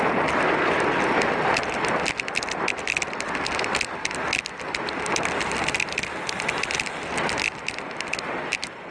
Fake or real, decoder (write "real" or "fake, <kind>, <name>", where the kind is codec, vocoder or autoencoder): real